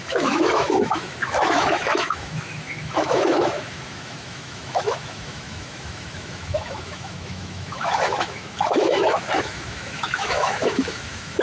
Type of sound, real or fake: fake